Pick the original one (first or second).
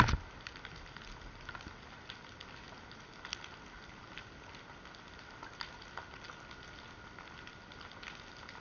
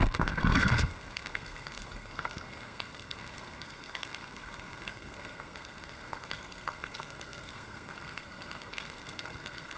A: first